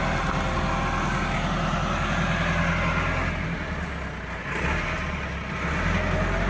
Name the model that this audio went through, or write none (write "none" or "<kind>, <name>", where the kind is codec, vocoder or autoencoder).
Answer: none